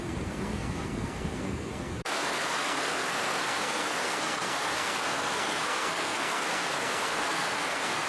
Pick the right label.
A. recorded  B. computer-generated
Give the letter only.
B